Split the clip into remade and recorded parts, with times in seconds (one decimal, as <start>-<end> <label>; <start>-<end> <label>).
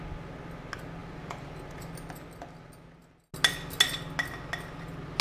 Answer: 0.0-1.0 recorded; 1.0-1.8 remade; 1.8-5.2 recorded